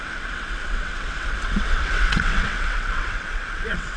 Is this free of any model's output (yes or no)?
no